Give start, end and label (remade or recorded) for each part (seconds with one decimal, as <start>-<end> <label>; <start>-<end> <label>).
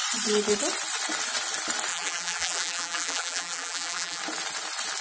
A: 0.0-1.9 recorded; 1.9-4.2 remade; 4.2-5.0 recorded